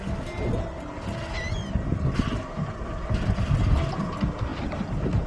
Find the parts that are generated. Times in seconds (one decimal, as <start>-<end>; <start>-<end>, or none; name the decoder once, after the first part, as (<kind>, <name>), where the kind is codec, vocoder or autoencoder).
none